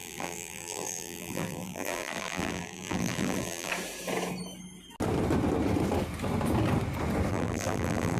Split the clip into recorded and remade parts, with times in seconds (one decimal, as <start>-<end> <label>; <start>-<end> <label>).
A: 0.0-3.7 remade; 3.7-7.3 recorded; 7.3-8.2 remade